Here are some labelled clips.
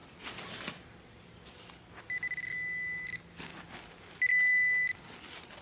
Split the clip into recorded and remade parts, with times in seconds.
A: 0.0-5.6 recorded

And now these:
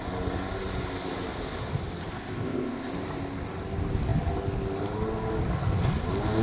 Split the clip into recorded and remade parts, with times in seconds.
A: 0.0-2.1 recorded; 2.1-2.9 remade; 2.9-6.4 recorded

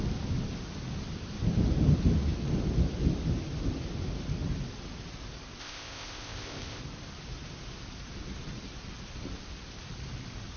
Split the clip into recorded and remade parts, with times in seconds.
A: 0.0-5.6 recorded; 5.6-6.8 remade; 6.8-10.6 recorded

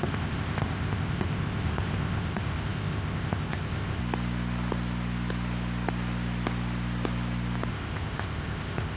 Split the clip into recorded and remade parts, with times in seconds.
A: 0.0-4.0 remade; 4.0-7.7 recorded; 7.7-9.0 remade

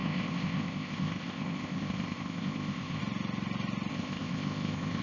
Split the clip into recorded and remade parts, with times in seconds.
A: 0.0-3.0 remade; 3.0-3.9 recorded; 3.9-5.0 remade

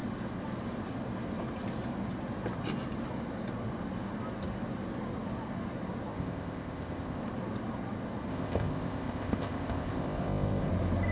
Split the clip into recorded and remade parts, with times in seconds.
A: 0.0-6.1 recorded; 6.1-7.2 remade; 7.2-8.3 recorded; 8.3-10.7 remade; 10.7-11.1 recorded